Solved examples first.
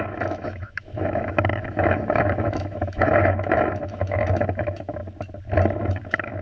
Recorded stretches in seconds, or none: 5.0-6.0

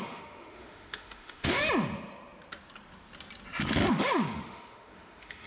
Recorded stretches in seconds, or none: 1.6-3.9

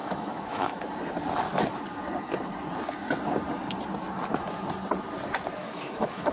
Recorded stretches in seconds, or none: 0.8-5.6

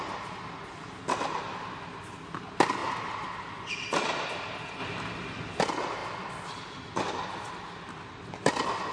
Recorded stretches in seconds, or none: 0.0-8.9

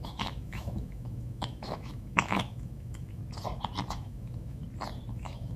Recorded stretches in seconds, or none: 3.2-3.9; 4.6-5.1